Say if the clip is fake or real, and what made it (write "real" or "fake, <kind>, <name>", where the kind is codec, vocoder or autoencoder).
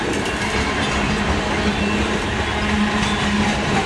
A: real